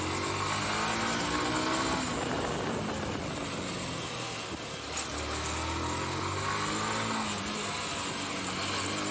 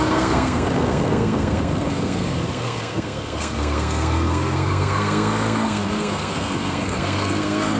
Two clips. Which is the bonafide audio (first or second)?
first